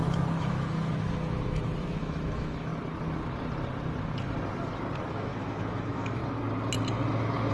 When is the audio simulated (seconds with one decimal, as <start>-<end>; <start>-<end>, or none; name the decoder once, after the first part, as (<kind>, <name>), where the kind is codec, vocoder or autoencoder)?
0.0-2.7 (autoencoder, DAC-VAE); 5.1-6.2